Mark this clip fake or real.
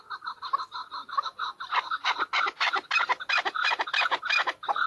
real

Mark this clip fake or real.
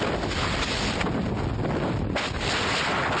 real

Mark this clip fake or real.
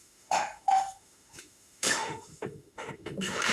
fake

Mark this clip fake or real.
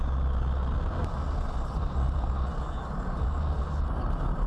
real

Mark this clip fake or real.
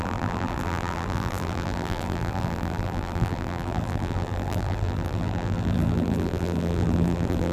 fake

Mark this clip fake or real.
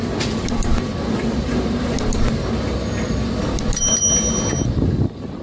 real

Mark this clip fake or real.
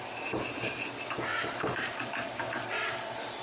real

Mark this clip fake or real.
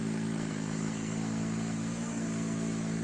fake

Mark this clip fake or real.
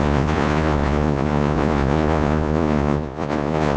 fake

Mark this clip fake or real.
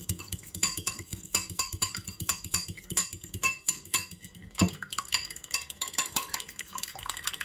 fake